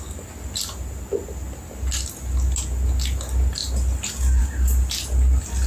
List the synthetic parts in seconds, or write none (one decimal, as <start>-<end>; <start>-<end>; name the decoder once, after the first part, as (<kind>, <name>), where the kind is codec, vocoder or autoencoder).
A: none